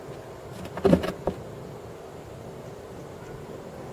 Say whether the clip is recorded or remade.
recorded